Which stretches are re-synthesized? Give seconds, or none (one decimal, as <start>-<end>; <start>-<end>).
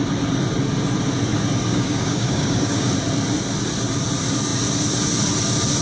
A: 1.7-2.9